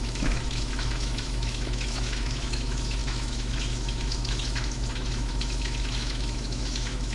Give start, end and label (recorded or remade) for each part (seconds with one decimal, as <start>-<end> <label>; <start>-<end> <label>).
0.0-7.1 remade